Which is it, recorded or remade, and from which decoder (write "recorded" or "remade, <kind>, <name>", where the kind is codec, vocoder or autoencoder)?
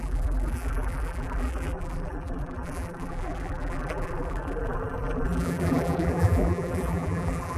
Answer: remade, vocoder, BigVGAN v2